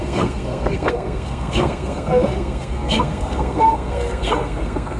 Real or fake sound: fake